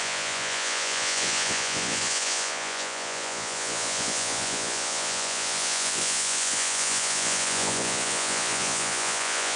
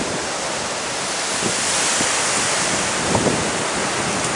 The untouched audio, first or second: second